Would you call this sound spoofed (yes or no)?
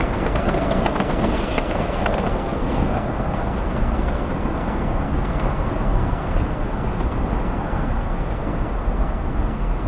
yes